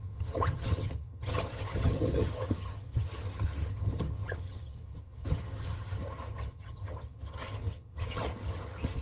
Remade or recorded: remade